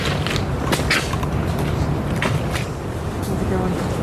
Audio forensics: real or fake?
real